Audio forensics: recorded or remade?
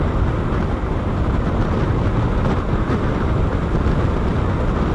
recorded